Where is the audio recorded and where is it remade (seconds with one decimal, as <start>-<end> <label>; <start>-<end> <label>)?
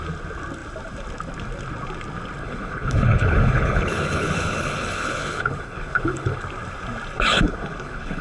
0.0-2.4 recorded; 2.4-6.4 remade; 6.4-7.3 recorded; 7.3-8.2 remade